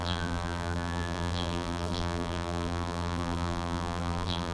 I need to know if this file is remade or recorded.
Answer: remade